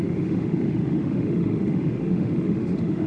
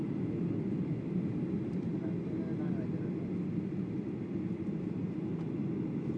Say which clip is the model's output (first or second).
first